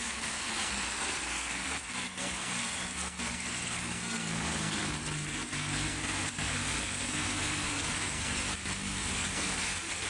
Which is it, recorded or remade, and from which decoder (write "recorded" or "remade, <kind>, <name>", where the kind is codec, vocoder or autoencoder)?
remade, codec, SNAC